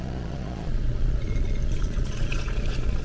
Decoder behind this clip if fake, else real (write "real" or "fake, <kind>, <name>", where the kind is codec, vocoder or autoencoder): fake, vocoder, Vocos